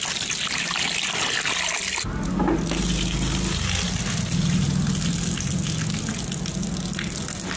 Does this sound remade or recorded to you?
recorded